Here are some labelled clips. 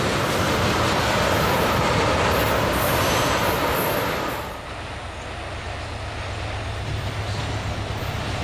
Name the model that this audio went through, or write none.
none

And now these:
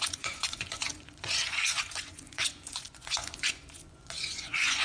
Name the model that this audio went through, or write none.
vocoder, Vocos